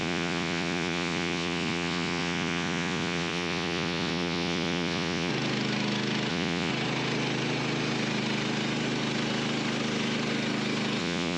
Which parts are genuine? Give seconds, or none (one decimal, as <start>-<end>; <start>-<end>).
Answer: 5.3-6.3; 6.7-11.0

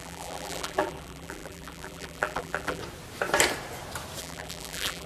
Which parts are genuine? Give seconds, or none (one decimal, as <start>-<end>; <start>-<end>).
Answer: 2.8-4.2

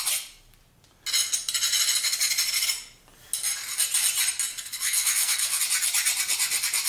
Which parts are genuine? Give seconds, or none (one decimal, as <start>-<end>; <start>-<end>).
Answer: 0.0-4.5; 5.6-6.9

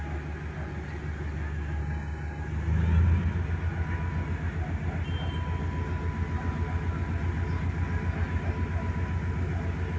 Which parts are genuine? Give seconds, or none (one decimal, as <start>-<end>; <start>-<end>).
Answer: 0.0-1.8; 2.4-10.0

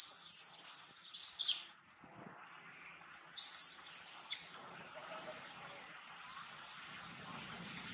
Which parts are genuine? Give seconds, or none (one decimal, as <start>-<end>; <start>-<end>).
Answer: 0.0-7.9

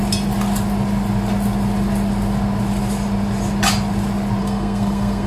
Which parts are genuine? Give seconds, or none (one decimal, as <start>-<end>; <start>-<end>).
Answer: 0.0-4.4